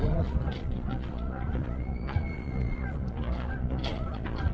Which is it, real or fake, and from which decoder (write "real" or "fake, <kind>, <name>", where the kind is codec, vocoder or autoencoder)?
fake, vocoder, Vocos